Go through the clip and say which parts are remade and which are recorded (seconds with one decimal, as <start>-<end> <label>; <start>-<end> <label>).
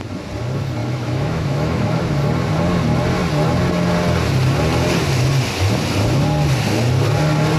0.0-0.8 recorded; 0.8-2.0 remade; 2.0-7.6 recorded